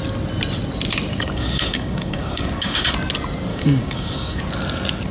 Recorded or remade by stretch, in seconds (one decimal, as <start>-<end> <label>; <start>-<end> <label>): 0.0-1.1 recorded; 1.1-2.9 remade; 2.9-3.5 recorded; 3.5-4.4 remade; 4.4-5.1 recorded